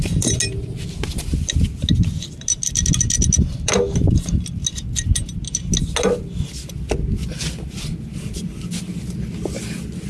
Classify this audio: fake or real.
real